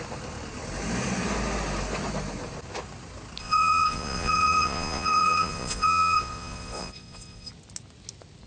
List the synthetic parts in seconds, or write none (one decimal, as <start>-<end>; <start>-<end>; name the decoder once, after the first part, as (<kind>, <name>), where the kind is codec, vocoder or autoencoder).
3.4-7.5 (vocoder, Vocos)